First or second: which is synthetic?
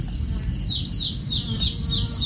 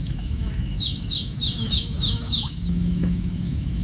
second